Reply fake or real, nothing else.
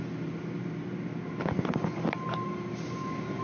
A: real